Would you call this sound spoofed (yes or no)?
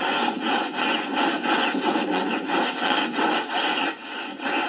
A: yes